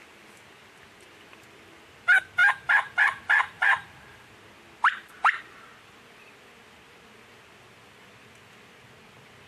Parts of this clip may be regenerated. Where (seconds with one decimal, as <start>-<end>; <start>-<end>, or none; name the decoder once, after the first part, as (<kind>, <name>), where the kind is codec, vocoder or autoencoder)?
2.4-4.3 (vocoder, BigVGAN v2)